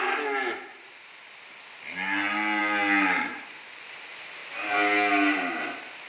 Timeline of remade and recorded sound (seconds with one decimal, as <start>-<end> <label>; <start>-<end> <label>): 0.0-3.3 recorded; 3.3-3.9 remade; 3.9-6.1 recorded